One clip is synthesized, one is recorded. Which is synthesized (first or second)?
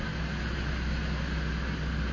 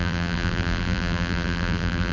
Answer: second